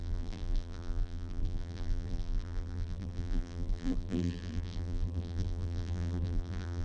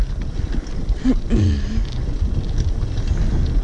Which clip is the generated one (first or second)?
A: first